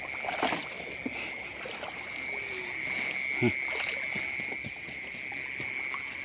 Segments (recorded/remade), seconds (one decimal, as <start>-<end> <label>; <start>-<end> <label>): 0.0-6.2 recorded

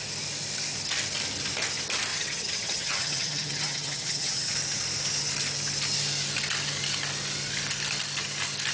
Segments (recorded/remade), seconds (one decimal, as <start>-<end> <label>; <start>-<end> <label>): 0.0-2.1 recorded; 2.1-4.5 remade; 4.5-8.7 recorded

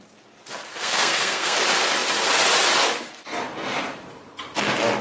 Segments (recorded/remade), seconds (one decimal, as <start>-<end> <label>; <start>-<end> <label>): 0.0-0.7 recorded; 0.7-1.6 remade; 1.6-5.0 recorded

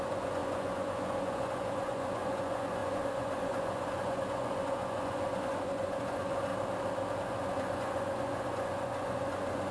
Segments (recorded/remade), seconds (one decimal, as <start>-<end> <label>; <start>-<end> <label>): 0.0-6.5 remade; 6.5-7.2 recorded; 7.2-9.7 remade

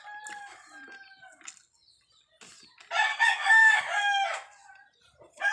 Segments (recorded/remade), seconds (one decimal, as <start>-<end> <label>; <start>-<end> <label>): 0.0-3.1 recorded; 3.1-3.8 remade; 3.8-5.5 recorded

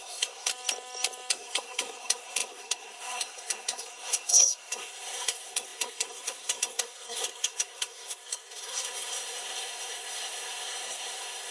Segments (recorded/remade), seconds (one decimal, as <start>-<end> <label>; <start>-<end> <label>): 0.0-0.5 remade; 0.5-1.3 recorded; 1.3-11.5 remade

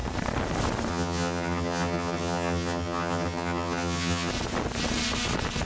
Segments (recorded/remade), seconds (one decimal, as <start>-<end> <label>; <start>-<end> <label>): 0.0-0.9 recorded; 0.9-4.3 remade; 4.3-5.7 recorded

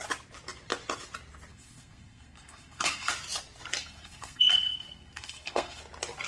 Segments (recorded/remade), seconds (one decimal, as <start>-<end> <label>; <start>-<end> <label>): 0.0-1.5 recorded; 1.5-3.1 remade; 3.1-3.8 recorded; 3.8-5.8 remade; 5.8-6.3 recorded